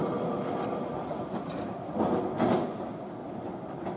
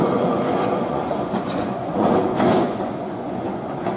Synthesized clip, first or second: second